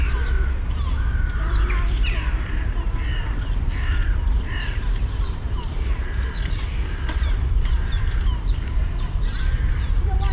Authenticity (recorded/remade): remade